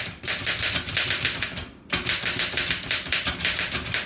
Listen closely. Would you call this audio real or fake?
real